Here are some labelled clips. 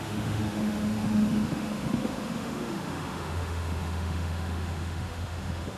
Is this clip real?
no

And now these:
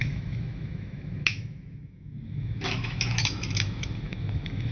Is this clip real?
no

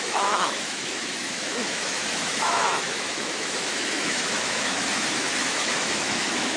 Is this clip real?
no